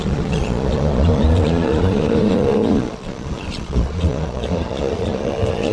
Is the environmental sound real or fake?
fake